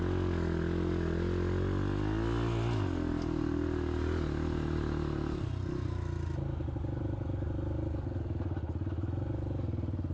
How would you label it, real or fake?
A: real